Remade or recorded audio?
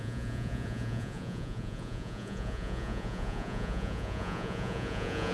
remade